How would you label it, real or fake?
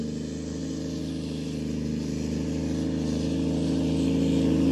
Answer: real